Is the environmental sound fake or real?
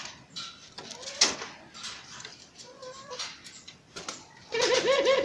real